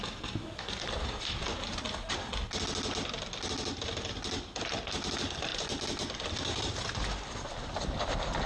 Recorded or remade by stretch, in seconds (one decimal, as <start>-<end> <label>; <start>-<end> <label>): 0.0-8.5 recorded